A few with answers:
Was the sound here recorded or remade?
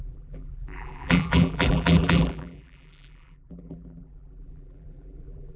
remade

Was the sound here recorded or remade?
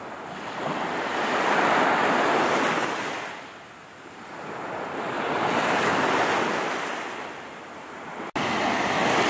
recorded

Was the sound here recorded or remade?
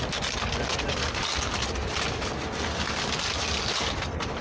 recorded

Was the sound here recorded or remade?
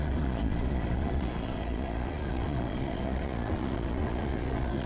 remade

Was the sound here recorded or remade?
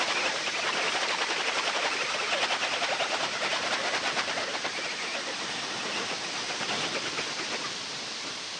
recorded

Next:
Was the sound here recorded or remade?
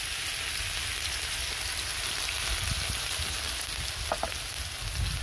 recorded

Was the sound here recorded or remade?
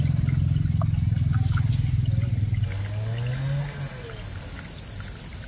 recorded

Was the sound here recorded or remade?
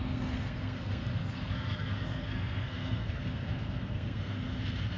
remade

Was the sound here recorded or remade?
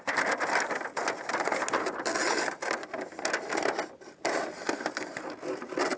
recorded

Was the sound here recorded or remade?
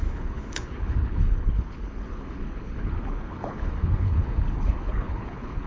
remade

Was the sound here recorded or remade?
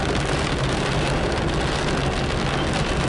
recorded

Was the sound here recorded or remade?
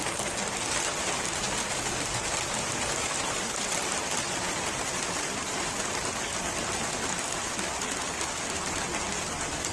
recorded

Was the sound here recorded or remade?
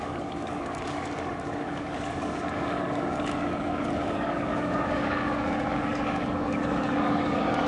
remade